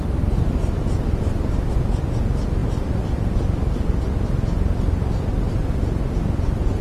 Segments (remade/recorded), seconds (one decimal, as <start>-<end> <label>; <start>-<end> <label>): 0.0-6.8 recorded